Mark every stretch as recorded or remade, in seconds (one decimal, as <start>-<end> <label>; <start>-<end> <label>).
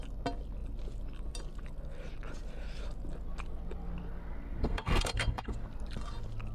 0.0-4.6 recorded; 4.6-5.5 remade; 5.5-6.5 recorded